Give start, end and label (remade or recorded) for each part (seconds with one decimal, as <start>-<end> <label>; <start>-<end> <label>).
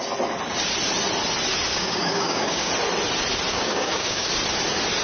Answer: 0.0-1.7 recorded; 1.7-2.7 remade; 2.7-3.5 recorded; 3.5-4.3 remade; 4.3-5.0 recorded